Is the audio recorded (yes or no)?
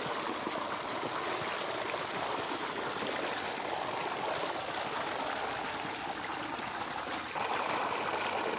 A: yes